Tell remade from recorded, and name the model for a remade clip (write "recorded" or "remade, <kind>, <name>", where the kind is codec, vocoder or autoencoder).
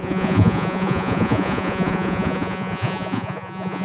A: remade, vocoder, Vocos